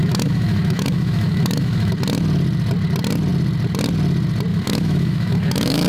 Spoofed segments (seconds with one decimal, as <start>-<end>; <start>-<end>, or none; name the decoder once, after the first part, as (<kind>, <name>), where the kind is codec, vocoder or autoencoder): 0.0-1.9 (autoencoder, DAC-VAE); 4.5-5.9

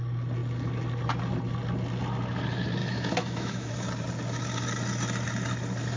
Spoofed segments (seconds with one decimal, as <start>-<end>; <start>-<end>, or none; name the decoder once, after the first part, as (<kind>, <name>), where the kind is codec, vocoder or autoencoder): 2.8-3.7 (autoencoder, DAC-VAE)

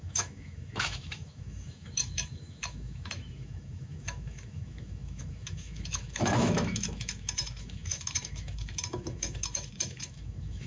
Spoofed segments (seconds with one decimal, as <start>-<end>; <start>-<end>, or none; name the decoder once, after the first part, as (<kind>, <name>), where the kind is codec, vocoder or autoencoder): 0.0-10.7 (autoencoder, DAC-VAE)